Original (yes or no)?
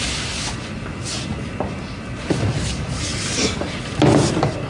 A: yes